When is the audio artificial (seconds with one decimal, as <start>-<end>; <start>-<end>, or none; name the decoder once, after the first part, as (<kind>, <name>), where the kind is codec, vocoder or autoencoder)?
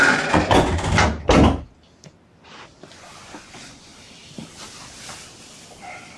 0.0-0.9 (vocoder, Vocos); 2.9-3.9